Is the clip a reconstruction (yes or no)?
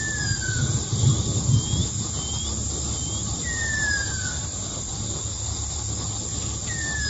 no